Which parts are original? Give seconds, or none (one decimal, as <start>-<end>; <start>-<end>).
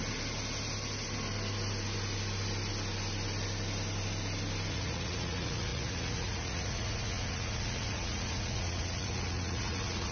0.0-4.7